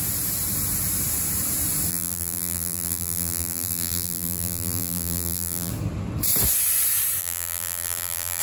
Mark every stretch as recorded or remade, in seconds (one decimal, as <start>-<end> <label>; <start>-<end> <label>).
0.0-1.9 recorded; 1.9-5.7 remade; 5.7-7.2 recorded; 7.2-8.4 remade